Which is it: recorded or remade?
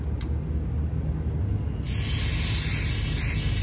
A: recorded